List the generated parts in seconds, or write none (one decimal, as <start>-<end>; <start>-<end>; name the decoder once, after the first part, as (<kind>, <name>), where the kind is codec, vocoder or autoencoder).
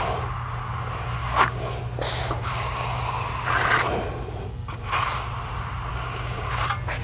1.2-1.8 (codec, DAC); 2.4-3.0; 5.9-6.5